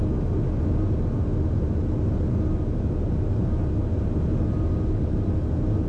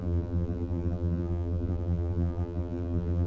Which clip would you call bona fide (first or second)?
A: first